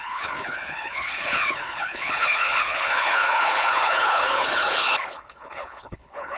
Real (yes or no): no